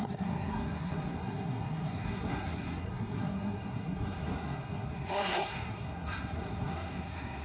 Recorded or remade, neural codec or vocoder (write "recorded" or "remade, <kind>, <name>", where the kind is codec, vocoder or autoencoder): remade, codec, SNAC